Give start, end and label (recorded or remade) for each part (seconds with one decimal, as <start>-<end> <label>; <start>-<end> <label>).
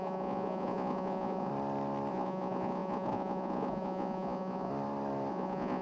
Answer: 0.0-1.5 remade; 1.5-2.1 recorded; 2.1-4.7 remade; 4.7-5.3 recorded; 5.3-5.8 remade